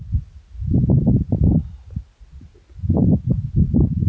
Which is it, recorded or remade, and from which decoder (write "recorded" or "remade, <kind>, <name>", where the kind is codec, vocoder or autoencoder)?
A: recorded